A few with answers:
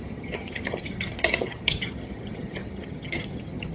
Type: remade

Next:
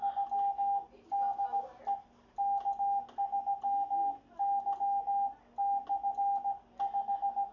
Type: recorded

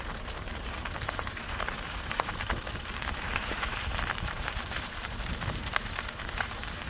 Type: remade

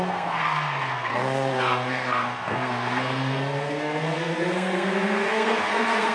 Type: remade